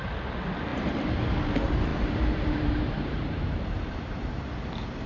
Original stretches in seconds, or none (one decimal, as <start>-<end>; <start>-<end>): 0.0-0.7; 1.4-1.9; 4.4-5.1